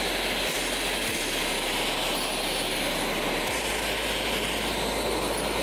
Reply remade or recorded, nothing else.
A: recorded